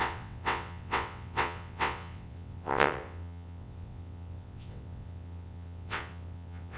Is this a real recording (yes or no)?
no